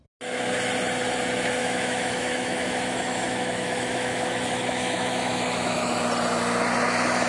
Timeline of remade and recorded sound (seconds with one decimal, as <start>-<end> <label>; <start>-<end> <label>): 0.0-1.6 recorded; 1.6-6.0 remade; 6.0-7.3 recorded